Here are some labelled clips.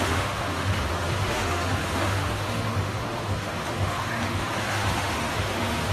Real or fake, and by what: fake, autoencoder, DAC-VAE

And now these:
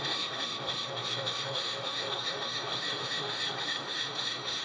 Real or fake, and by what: fake, autoencoder, DAC-VAE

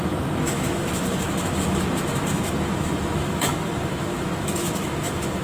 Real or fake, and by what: fake, autoencoder, DAC-VAE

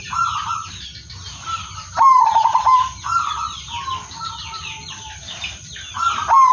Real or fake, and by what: real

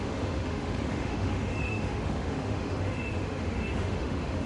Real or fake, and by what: fake, autoencoder, DAC-VAE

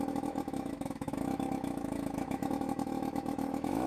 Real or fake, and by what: fake, autoencoder, DAC-VAE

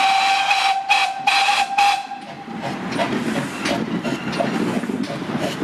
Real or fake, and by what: real